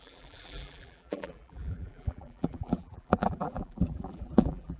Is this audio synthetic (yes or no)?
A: yes